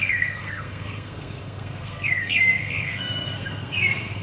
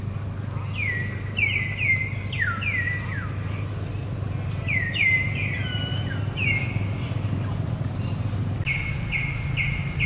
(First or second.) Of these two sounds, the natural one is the second